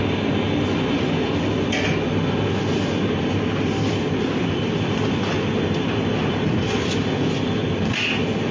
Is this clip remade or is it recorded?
recorded